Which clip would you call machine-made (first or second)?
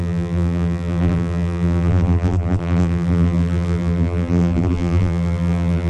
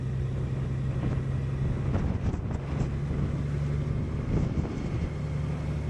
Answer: first